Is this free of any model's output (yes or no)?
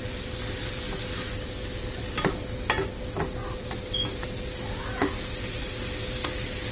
yes